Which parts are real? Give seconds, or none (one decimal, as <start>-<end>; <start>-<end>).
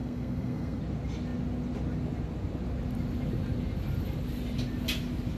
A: 0.8-5.4